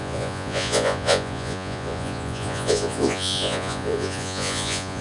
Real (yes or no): no